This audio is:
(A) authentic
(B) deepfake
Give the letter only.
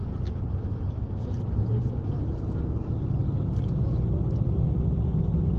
A